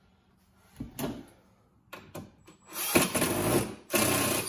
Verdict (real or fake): real